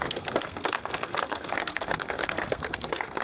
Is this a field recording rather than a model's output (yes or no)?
no